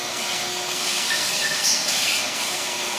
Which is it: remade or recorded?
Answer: remade